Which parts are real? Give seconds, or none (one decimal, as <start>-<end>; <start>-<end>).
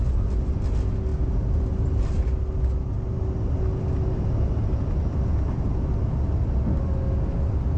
0.0-7.8